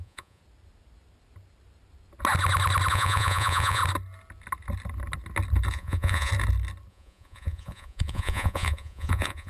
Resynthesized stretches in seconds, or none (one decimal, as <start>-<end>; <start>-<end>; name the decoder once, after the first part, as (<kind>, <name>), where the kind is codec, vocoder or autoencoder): 0.0-0.4 (vocoder, Vocos); 2.9-3.8; 5.7-6.3; 6.9-9.5